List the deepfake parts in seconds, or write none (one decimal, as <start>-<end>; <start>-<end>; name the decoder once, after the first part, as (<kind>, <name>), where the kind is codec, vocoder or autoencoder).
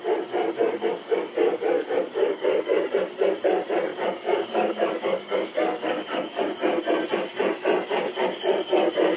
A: 0.9-2.9 (codec, DAC); 3.9-6.4